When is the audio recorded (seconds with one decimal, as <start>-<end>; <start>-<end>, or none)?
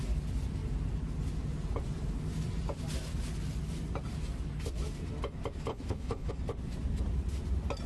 0.0-5.7; 6.3-7.9